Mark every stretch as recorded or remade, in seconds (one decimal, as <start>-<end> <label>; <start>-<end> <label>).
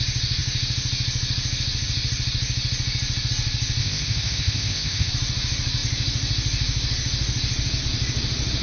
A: 0.0-3.8 recorded; 3.8-5.1 remade; 5.1-8.6 recorded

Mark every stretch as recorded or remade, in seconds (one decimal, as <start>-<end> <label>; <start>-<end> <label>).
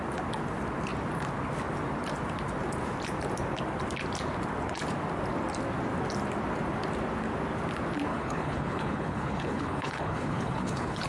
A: 0.0-8.1 recorded; 8.1-11.1 remade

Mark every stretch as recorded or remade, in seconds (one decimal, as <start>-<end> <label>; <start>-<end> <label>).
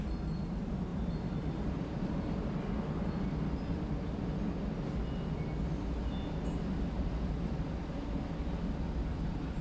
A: 0.0-0.9 recorded; 0.9-2.0 remade; 2.0-9.6 recorded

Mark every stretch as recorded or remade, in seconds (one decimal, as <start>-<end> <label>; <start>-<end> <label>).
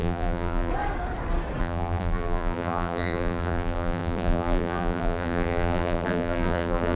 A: 0.0-0.7 remade; 0.7-1.6 recorded; 1.6-7.0 remade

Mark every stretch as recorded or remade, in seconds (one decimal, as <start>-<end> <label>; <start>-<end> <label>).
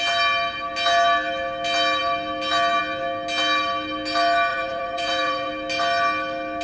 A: 0.0-4.5 recorded; 4.5-5.5 remade; 5.5-6.6 recorded